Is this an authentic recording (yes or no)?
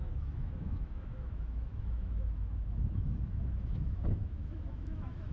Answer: no